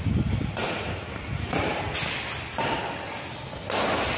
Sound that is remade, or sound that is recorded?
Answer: recorded